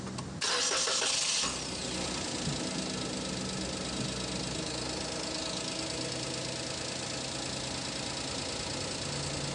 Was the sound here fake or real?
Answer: real